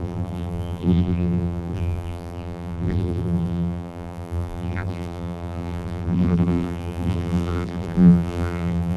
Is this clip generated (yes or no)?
yes